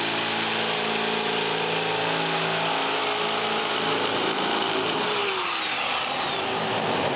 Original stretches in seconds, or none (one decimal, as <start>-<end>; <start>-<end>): 0.0-5.2; 5.8-7.2